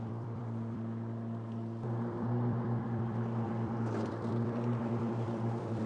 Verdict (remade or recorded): remade